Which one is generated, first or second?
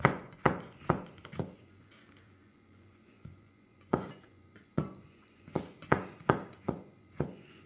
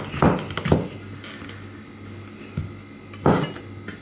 first